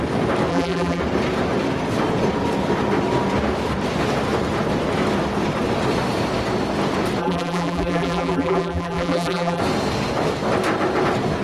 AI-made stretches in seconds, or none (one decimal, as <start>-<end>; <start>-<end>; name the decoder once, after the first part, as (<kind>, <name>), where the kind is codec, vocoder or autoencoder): 0.5-1.0 (vocoder, BigVGAN v2); 7.2-9.6